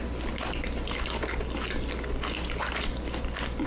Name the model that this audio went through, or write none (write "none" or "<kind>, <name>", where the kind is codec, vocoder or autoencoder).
none